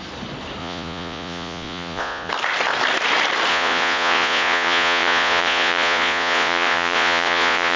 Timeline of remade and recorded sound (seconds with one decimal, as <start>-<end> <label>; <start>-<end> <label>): 0.0-0.6 recorded; 0.6-2.3 remade; 2.3-3.5 recorded; 3.5-7.8 remade